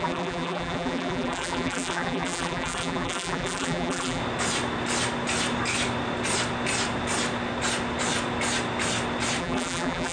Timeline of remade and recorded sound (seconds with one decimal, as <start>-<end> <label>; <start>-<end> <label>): 0.0-4.2 remade; 4.2-9.4 recorded; 9.4-10.1 remade

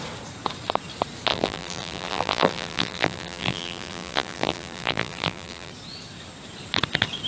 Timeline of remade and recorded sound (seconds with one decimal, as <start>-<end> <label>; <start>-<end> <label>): 0.0-1.3 recorded; 1.3-5.7 remade; 5.7-7.3 recorded

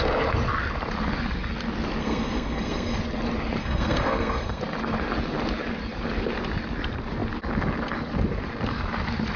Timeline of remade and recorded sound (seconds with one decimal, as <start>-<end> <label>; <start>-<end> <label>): 0.0-2.0 recorded; 2.0-3.0 remade; 3.0-3.6 recorded; 3.6-4.6 remade; 4.6-9.4 recorded

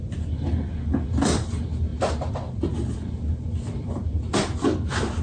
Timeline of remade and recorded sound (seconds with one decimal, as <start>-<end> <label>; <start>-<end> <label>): 0.0-5.2 recorded

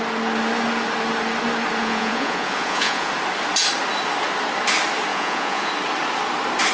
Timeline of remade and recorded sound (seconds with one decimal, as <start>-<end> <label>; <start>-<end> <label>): 0.0-1.8 recorded; 1.8-3.1 remade; 3.1-5.1 recorded; 5.1-5.7 remade; 5.7-6.7 recorded

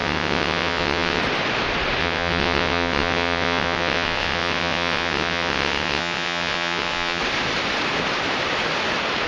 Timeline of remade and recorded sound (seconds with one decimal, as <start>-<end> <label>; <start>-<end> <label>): 0.0-1.2 remade; 1.2-2.0 recorded; 2.0-7.2 remade; 7.2-9.3 recorded

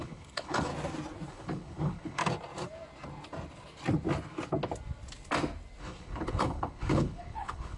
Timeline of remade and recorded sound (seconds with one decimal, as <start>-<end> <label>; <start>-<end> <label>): 0.0-0.7 remade; 0.7-1.3 recorded; 1.3-2.2 remade; 2.2-5.8 recorded; 5.8-7.8 remade

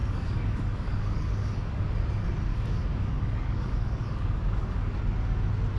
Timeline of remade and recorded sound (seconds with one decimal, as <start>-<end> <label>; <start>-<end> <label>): 0.0-1.8 remade; 1.8-2.5 recorded; 2.5-5.0 remade; 5.0-5.8 recorded